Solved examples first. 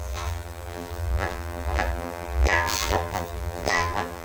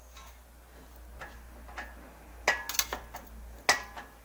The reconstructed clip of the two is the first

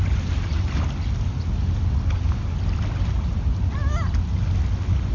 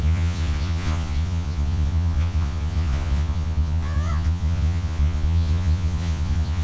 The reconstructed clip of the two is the second